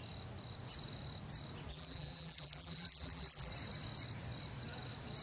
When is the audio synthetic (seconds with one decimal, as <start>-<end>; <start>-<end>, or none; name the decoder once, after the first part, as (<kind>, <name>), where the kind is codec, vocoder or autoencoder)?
1.7-3.5 (vocoder, BigVGAN v2)